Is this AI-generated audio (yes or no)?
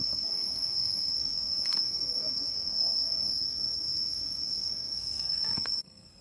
yes